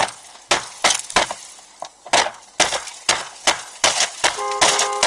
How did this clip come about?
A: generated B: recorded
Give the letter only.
B